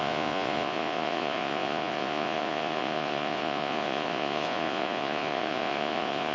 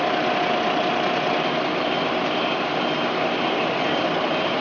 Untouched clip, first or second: second